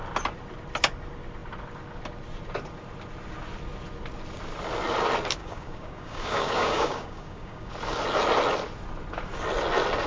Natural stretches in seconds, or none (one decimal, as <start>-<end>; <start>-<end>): 0.0-5.4; 7.7-10.1